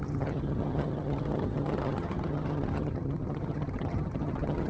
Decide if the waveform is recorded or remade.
remade